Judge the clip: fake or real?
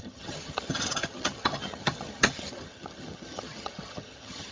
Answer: fake